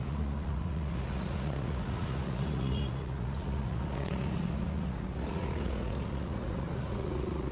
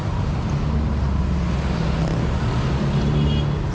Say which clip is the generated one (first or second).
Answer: first